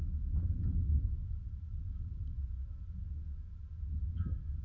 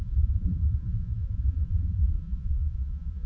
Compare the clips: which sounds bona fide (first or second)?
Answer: first